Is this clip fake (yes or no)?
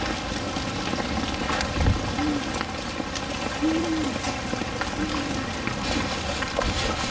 no